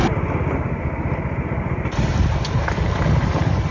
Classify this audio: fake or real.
real